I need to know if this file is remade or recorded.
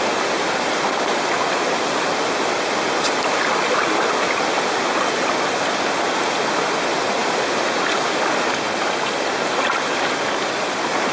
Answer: recorded